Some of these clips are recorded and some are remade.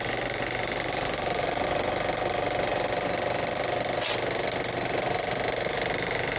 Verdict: recorded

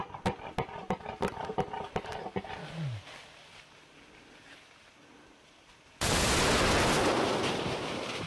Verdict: recorded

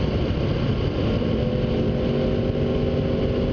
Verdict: recorded